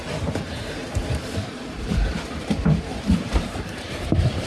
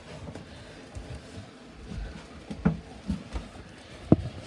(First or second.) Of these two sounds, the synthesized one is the first